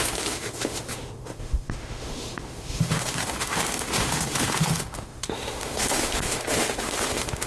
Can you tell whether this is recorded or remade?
remade